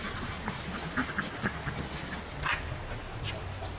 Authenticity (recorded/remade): recorded